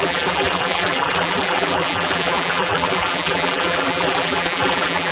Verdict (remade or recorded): remade